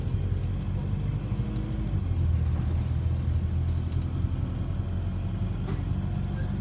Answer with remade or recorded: recorded